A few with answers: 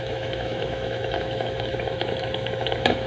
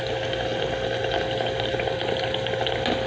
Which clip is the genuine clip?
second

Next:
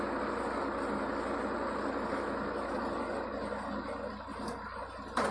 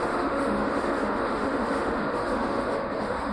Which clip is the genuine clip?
first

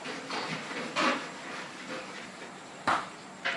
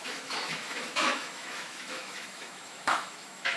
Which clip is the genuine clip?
first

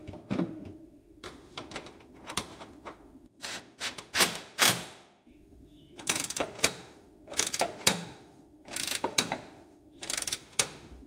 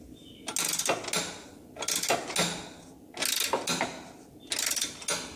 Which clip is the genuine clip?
second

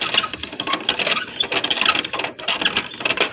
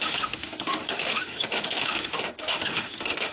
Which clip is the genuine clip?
first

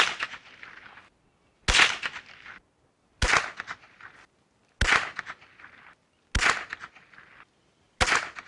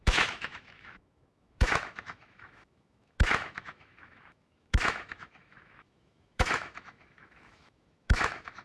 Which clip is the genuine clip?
first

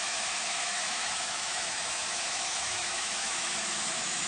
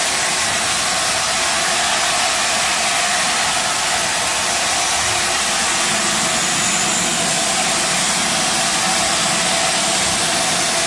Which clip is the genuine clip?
second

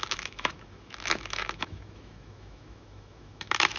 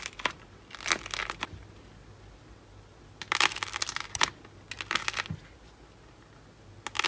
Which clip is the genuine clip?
second